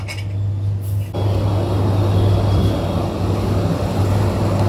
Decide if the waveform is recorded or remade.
recorded